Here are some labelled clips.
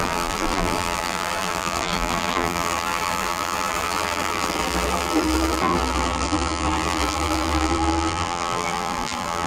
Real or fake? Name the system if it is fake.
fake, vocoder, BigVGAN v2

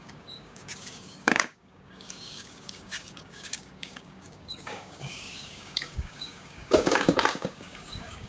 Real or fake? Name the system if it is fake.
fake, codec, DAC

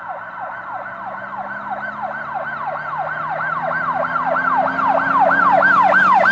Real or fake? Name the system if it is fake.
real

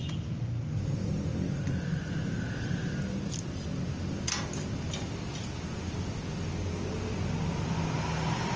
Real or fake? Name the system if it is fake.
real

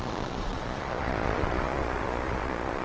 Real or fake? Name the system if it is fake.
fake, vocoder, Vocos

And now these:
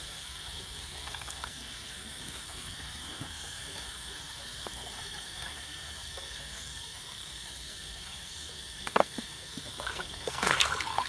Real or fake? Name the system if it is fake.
fake, codec, SNAC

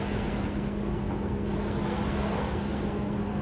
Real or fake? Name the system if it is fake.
fake, codec, SNAC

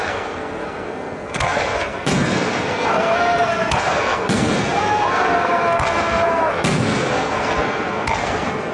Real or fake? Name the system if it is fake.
fake, codec, SNAC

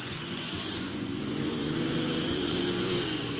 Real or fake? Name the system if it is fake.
fake, vocoder, Vocos